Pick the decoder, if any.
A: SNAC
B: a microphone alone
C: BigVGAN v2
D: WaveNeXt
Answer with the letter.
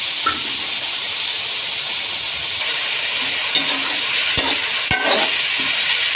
B